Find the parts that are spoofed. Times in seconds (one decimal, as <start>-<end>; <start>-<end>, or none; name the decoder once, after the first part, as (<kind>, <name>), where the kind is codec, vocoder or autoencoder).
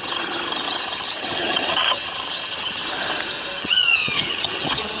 0.0-2.8 (vocoder, HiFi-GAN); 3.6-5.0